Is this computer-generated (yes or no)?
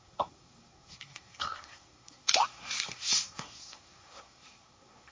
yes